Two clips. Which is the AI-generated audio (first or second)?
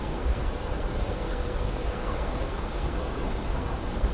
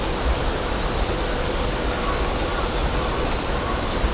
first